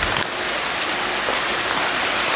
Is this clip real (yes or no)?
yes